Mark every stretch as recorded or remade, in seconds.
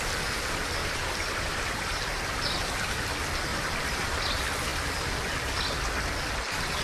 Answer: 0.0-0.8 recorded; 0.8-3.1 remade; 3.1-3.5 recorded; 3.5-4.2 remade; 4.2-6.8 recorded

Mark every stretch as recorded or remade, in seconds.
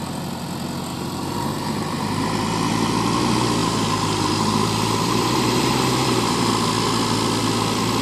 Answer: 0.0-0.9 recorded; 0.9-2.3 remade; 2.3-3.6 recorded; 3.6-6.5 remade; 6.5-8.0 recorded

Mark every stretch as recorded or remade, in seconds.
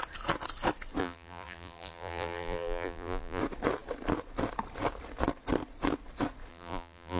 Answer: 0.0-1.0 recorded; 1.0-3.4 remade; 3.4-6.5 recorded; 6.5-7.2 remade